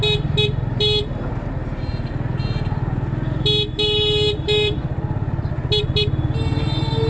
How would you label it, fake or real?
real